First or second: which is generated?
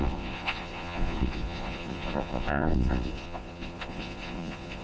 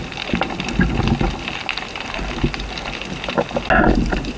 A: first